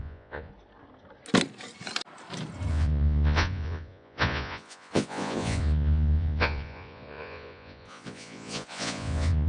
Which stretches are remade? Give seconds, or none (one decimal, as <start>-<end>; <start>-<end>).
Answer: 0.0-0.5; 2.7-9.5